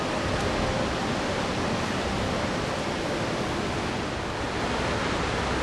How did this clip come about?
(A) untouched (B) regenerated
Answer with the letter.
A